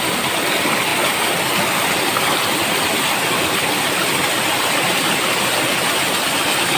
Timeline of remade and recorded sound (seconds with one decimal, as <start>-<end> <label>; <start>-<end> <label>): 0.0-0.9 remade; 0.9-5.0 recorded; 5.0-6.8 remade